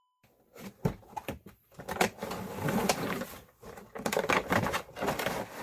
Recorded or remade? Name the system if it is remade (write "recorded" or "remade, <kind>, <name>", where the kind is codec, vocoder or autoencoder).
remade, vocoder, BigVGAN v2